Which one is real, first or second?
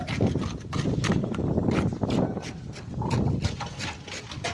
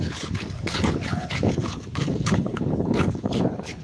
first